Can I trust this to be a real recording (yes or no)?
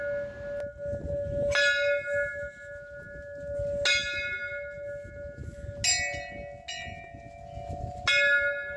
yes